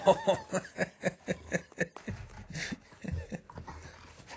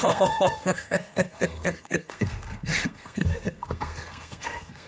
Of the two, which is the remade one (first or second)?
second